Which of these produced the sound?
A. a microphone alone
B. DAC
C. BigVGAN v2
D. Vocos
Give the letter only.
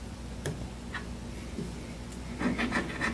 D